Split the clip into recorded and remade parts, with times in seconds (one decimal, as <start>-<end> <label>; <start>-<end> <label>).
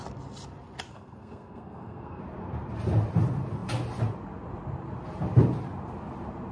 0.0-0.9 recorded; 0.9-2.2 remade; 2.2-6.5 recorded